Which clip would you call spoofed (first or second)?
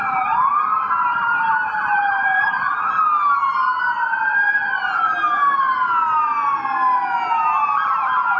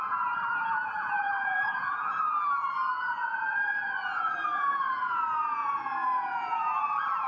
second